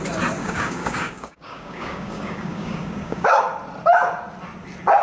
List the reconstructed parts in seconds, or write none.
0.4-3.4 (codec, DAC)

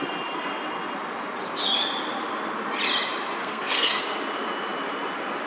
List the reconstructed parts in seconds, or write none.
3.4-4.0 (codec, SNAC)

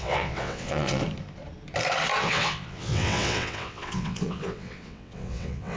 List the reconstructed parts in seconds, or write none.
0.0-1.0 (vocoder, WaveNeXt); 2.2-5.8

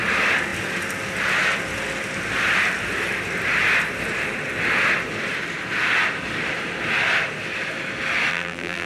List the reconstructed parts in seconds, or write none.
8.3-8.9 (vocoder, BigVGAN v2)